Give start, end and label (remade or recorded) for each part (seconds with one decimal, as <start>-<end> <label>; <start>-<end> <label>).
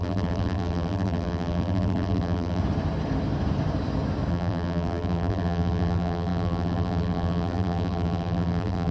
0.0-2.6 remade; 2.6-4.3 recorded; 4.3-8.9 remade